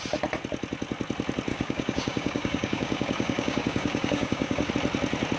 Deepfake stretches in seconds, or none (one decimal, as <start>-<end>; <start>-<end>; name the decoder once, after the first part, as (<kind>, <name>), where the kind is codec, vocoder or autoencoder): 1.5-4.7 (codec, DAC)